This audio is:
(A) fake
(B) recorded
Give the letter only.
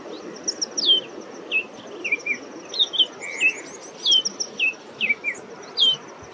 B